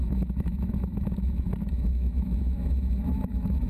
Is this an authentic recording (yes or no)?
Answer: no